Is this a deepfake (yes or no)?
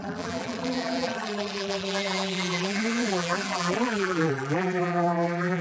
yes